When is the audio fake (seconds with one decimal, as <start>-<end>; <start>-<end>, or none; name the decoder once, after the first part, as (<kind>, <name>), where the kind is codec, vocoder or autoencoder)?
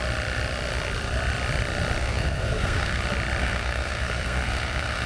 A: 2.0-3.0 (codec, SNAC); 3.4-5.1